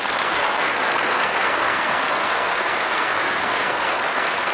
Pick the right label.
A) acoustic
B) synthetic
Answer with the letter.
B